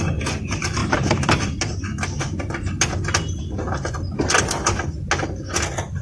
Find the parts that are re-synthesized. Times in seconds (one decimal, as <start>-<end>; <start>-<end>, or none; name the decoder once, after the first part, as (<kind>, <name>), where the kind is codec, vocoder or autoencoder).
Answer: none